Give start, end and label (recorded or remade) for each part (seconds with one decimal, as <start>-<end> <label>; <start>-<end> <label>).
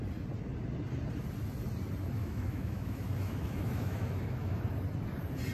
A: 0.0-2.2 recorded; 2.2-4.6 remade; 4.6-5.5 recorded